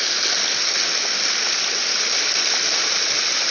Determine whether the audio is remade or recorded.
recorded